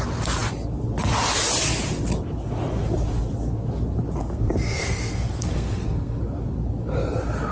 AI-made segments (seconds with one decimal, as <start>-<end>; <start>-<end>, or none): 4.2-6.2